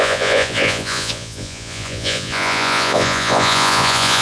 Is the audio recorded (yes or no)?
no